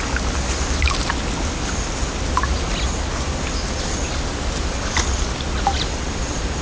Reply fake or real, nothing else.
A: real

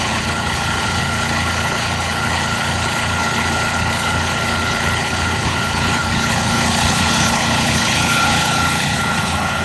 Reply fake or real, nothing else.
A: fake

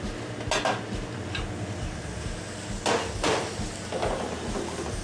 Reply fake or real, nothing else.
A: real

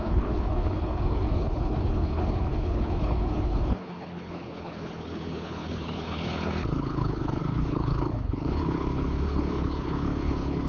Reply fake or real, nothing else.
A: fake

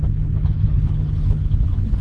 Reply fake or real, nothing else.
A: fake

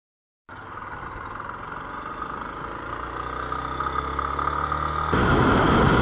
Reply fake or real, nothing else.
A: real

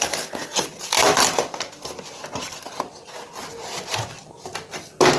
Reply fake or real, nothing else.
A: real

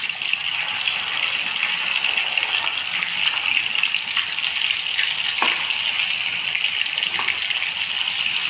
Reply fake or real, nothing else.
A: real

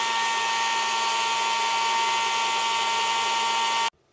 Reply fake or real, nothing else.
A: real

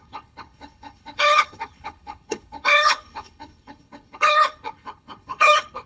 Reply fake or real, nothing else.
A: fake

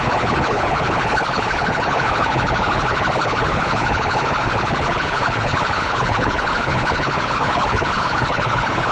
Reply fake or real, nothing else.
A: fake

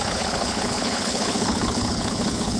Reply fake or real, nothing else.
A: fake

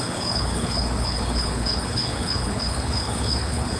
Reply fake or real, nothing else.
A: fake